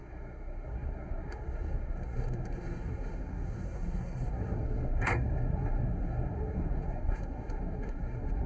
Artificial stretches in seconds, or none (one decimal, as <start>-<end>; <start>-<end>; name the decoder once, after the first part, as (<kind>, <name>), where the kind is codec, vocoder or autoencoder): 0.0-8.5 (codec, SNAC)